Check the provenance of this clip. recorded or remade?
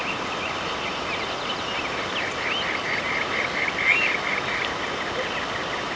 recorded